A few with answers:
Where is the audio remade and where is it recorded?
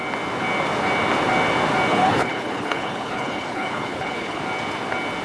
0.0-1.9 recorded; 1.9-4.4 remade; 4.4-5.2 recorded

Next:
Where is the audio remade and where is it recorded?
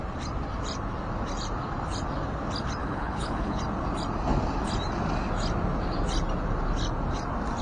0.0-2.8 recorded; 2.8-3.6 remade; 3.6-7.6 recorded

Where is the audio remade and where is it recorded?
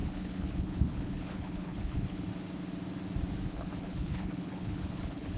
0.0-2.3 remade; 2.3-3.5 recorded; 3.5-5.4 remade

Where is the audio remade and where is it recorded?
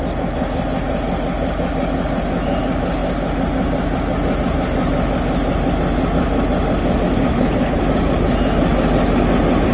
0.0-7.3 recorded; 7.3-7.8 remade; 7.8-9.7 recorded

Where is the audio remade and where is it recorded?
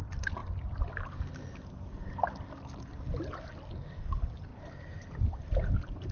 0.0-6.1 recorded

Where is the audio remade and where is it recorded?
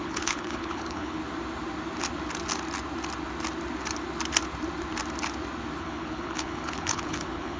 0.0-1.2 remade; 1.2-5.8 recorded; 5.8-7.6 remade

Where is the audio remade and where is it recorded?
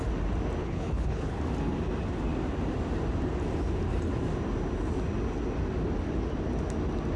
0.0-0.6 recorded; 0.6-1.4 remade; 1.4-7.2 recorded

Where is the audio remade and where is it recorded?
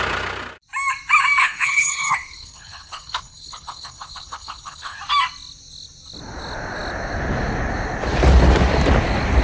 0.0-1.4 recorded; 1.4-5.0 remade; 5.0-9.4 recorded